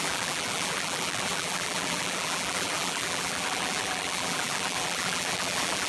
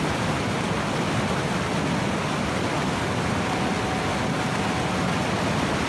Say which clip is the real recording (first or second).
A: second